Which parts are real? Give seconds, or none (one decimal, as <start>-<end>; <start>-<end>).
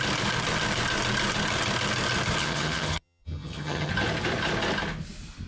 0.0-2.4; 3.9-5.5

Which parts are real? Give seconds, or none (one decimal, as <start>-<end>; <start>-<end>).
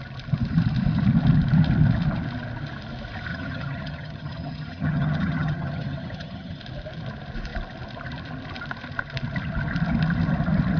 0.0-3.3; 6.6-10.8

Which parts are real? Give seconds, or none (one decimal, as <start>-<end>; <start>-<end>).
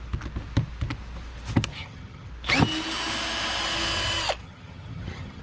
0.0-1.7; 2.3-4.4